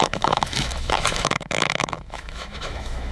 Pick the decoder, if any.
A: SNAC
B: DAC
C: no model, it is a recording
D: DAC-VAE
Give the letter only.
D